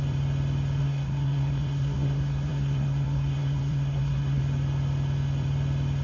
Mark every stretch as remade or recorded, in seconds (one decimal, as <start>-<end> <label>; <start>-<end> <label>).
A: 0.0-0.8 recorded; 0.8-4.4 remade; 4.4-6.0 recorded